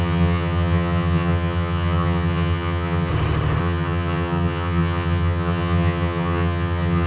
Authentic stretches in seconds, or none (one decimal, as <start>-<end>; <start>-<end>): 3.1-3.6